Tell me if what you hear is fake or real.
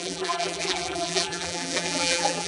fake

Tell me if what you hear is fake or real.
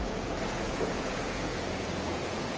fake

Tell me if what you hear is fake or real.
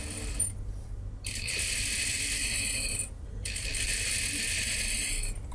fake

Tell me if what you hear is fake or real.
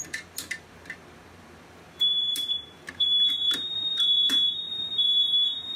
fake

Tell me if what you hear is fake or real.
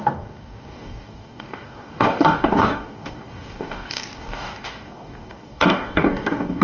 fake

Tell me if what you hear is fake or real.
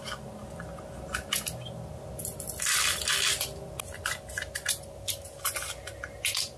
real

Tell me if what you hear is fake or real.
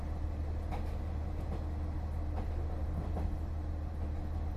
real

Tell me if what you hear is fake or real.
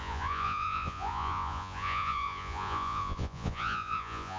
fake